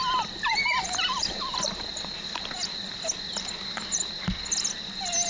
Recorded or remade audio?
recorded